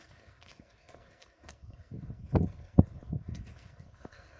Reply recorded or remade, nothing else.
remade